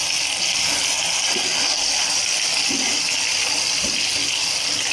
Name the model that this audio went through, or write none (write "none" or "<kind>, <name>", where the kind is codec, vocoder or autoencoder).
none